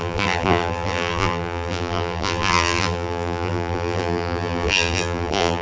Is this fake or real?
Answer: fake